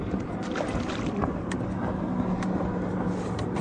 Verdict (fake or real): real